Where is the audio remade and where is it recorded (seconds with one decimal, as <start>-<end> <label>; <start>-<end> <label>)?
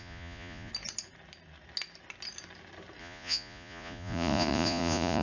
0.0-0.7 remade; 0.7-3.0 recorded; 3.0-5.2 remade